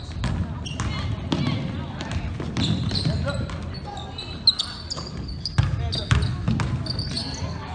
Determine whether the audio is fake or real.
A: real